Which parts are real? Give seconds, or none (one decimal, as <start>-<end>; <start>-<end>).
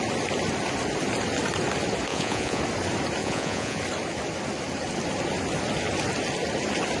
0.0-2.1; 2.6-3.2; 3.8-7.0